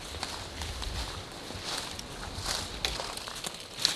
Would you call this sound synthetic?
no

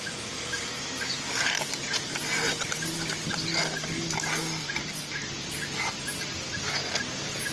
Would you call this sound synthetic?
no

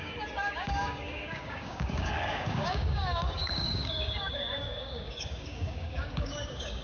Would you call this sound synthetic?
yes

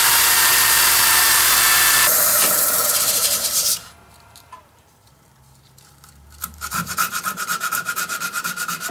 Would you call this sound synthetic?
yes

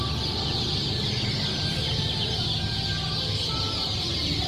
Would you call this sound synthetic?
no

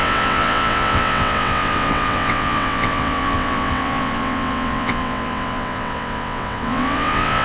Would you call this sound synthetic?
yes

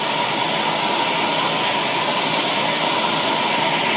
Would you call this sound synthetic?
no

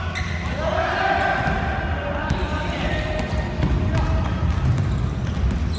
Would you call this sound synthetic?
no